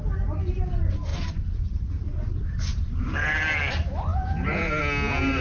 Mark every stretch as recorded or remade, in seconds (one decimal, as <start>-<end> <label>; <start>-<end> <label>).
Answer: 0.0-4.1 recorded; 4.1-4.8 remade; 4.8-5.4 recorded